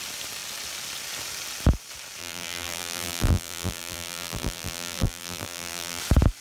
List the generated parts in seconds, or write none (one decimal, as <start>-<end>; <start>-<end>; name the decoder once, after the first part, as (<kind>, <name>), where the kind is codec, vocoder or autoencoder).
2.2-6.0 (vocoder, BigVGAN v2)